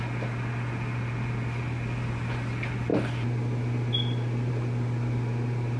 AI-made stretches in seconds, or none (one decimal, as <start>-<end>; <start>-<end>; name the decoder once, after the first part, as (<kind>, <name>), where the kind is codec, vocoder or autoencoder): none